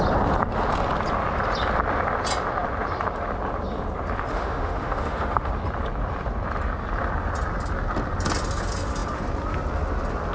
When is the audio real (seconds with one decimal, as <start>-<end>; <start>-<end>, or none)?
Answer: 0.0-4.3; 5.5-10.3